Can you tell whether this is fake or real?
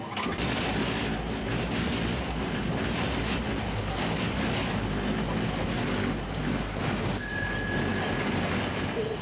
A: real